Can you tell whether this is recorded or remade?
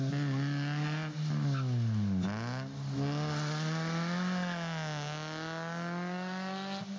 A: recorded